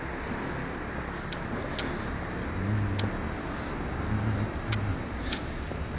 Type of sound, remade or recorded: recorded